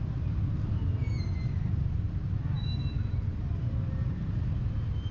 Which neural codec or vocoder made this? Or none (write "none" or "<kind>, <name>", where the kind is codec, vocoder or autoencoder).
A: none